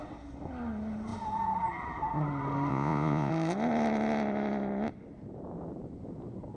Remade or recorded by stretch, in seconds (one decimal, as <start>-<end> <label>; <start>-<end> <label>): 0.0-2.7 recorded; 2.7-3.3 remade; 3.3-6.6 recorded